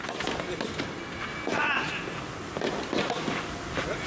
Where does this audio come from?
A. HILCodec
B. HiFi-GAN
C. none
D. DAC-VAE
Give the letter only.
C